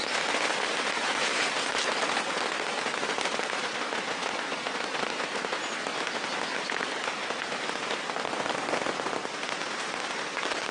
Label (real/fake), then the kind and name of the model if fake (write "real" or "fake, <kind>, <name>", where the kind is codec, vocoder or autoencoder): real